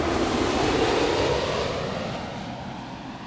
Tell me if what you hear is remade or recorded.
recorded